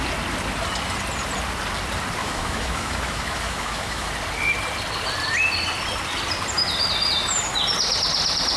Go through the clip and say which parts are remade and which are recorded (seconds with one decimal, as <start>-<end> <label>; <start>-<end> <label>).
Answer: 0.0-2.2 recorded; 2.2-4.1 remade; 4.1-8.6 recorded